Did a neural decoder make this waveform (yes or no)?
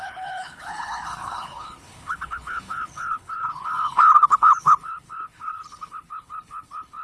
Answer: yes